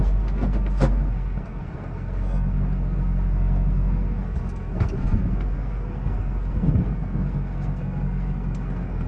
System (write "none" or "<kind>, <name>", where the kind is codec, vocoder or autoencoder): codec, SNAC